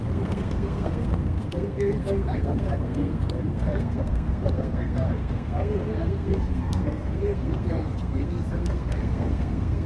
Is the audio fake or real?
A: fake